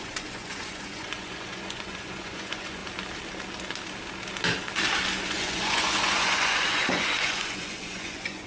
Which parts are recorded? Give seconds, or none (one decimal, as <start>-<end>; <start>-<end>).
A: 2.8-5.3